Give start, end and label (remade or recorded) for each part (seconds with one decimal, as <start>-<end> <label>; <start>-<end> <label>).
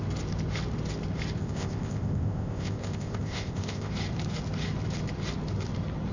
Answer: 0.0-1.4 recorded; 1.4-3.9 remade; 3.9-6.1 recorded